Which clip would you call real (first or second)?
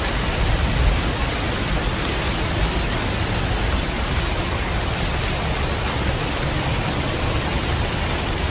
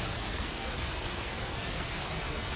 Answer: first